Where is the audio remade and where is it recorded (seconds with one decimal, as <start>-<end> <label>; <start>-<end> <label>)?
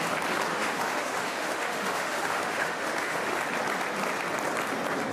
0.0-0.5 recorded; 0.5-3.4 remade; 3.4-5.1 recorded